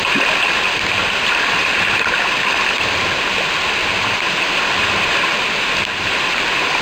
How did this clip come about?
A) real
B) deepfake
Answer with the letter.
A